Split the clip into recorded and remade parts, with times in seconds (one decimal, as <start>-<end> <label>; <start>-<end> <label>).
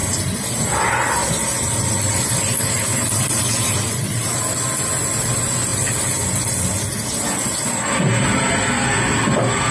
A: 0.0-0.6 remade; 0.6-1.2 recorded; 1.2-4.4 remade; 4.4-9.7 recorded